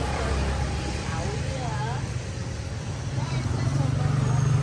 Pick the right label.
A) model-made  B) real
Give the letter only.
B